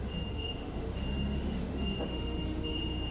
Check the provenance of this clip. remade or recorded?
remade